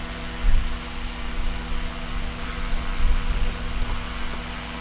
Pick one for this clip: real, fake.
real